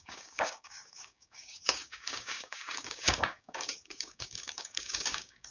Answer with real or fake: fake